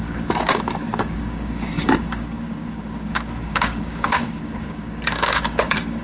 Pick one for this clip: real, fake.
fake